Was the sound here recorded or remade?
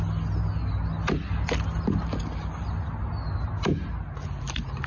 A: recorded